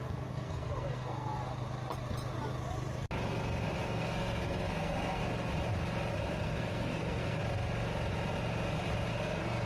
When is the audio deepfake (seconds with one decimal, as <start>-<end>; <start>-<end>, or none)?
0.0-1.4; 3.8-5.2; 6.2-7.4; 9.1-9.7